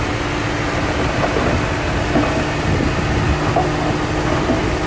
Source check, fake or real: real